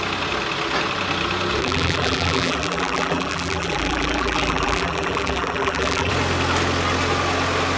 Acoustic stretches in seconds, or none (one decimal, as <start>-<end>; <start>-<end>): 0.0-1.6; 6.1-7.8